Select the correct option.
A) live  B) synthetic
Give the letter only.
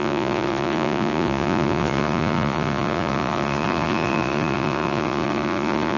B